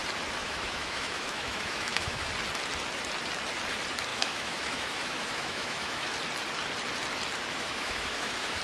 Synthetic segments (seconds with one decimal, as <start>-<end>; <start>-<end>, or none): 0.4-2.3; 4.1-6.1; 7.5-8.6